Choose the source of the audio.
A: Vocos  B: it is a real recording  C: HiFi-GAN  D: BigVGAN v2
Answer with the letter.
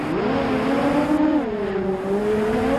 B